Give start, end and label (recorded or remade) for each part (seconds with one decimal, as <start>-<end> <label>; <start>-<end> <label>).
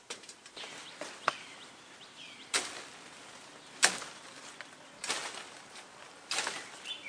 0.0-7.1 recorded